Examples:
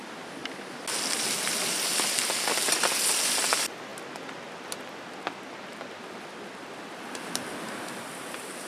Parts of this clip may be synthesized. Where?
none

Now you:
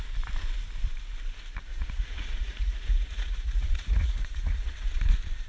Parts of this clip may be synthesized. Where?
1.7-5.0 (vocoder, Vocos)

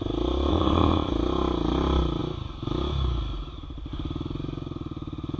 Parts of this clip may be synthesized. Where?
0.5-1.1 (codec, ZipCodec)

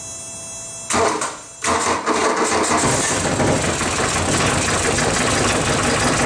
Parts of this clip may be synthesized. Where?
none

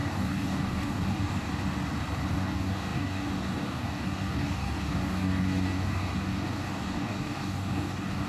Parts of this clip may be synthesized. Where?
0.0-1.5 (codec, DAC); 2.3-8.3